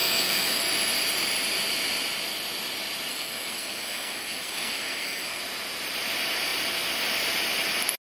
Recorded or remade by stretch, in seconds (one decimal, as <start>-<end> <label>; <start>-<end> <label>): 0.0-0.6 remade; 0.6-3.1 recorded; 3.1-5.4 remade; 5.4-8.0 recorded